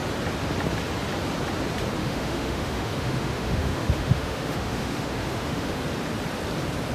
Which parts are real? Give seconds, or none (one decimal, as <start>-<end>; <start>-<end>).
0.0-2.0; 5.8-6.9

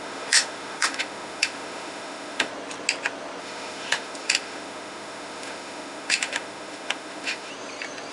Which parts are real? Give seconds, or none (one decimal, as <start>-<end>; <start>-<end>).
2.5-3.4; 7.5-8.1

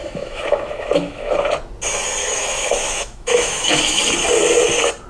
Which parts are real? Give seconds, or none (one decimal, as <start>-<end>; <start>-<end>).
1.5-2.2; 4.0-5.1

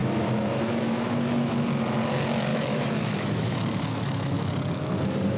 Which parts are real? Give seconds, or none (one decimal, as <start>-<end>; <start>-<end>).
1.5-2.5; 4.5-5.4

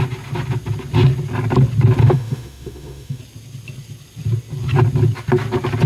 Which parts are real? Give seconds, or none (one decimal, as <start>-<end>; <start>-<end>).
0.0-2.0; 3.2-5.9

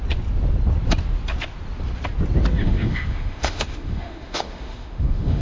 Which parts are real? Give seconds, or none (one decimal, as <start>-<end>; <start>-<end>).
0.0-2.6

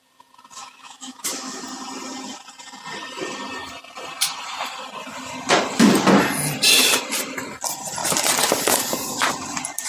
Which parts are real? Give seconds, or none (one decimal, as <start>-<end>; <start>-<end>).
0.0-0.6; 1.6-9.9